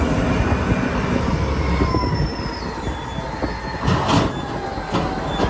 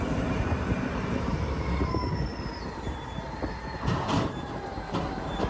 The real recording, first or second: first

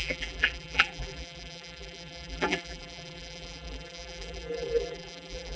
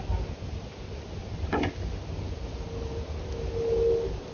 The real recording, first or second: second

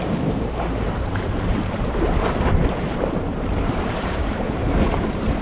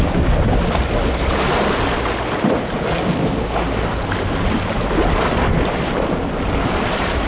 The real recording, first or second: second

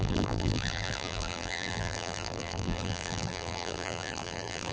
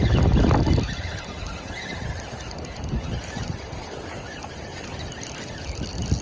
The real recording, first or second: second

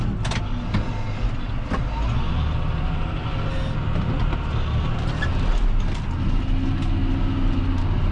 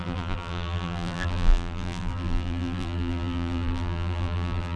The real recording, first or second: first